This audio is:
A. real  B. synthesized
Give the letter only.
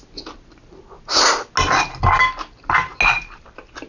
A